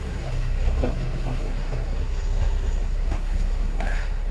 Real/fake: fake